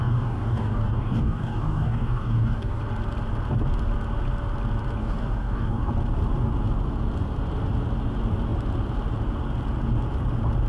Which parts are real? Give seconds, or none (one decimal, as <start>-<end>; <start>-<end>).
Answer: 2.8-5.0; 5.9-10.7